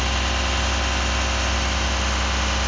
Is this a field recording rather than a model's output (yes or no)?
yes